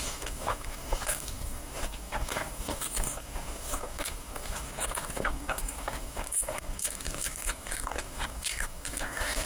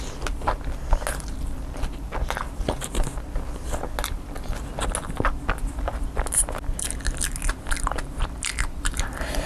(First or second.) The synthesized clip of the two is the first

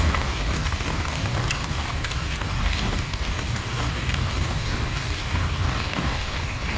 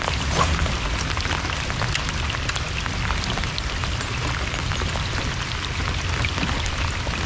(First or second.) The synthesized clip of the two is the first